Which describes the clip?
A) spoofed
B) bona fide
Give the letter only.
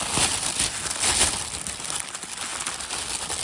B